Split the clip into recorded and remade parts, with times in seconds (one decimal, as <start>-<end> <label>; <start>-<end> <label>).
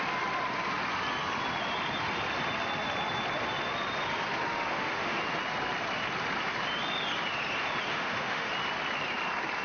0.0-4.5 recorded; 4.5-5.2 remade; 5.2-7.9 recorded; 7.9-8.5 remade; 8.5-9.6 recorded